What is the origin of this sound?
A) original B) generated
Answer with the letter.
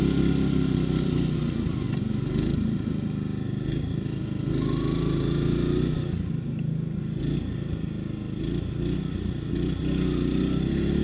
A